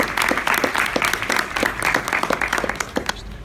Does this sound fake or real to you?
fake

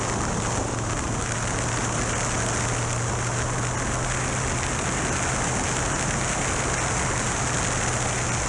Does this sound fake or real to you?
real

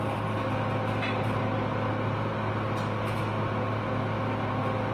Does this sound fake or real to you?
real